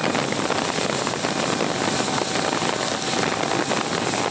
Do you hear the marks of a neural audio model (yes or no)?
no